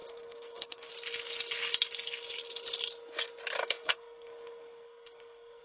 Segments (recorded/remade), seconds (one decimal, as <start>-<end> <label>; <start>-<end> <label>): 0.0-0.9 remade; 0.9-3.6 recorded; 3.6-5.6 remade

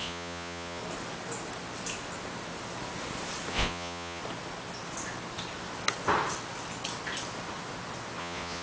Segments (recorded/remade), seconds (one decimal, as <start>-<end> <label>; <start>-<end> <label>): 0.0-0.8 remade; 0.8-3.5 recorded; 3.5-4.2 remade; 4.2-8.2 recorded; 8.2-8.6 remade

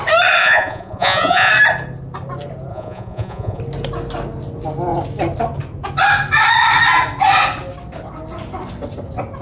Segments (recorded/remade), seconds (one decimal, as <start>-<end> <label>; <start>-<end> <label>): 0.0-0.4 recorded; 0.4-1.5 remade; 1.5-2.7 recorded; 2.7-3.6 remade; 3.6-9.4 recorded